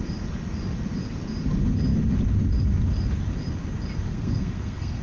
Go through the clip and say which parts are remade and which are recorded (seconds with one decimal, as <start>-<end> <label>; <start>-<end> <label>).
0.0-4.1 recorded; 4.1-5.0 remade